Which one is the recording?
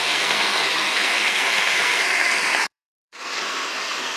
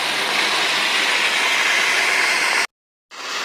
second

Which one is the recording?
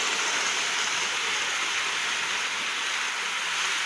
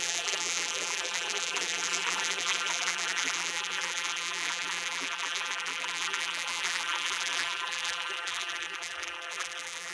first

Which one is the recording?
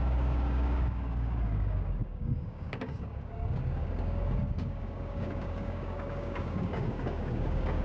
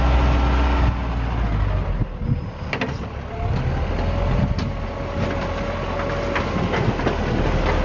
second